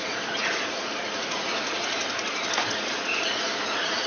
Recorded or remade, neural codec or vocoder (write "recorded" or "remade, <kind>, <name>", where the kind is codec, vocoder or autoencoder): remade, vocoder, Vocos